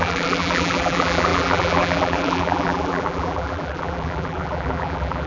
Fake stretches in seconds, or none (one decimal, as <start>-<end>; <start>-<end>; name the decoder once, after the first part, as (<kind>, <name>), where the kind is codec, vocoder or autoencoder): 0.0-5.3 (vocoder, BigVGAN v2)